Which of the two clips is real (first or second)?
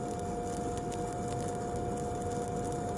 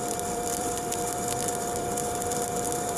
first